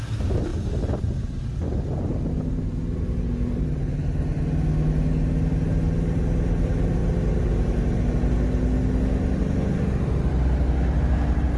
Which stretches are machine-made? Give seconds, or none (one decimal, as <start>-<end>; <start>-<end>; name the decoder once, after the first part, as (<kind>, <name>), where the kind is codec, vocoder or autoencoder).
none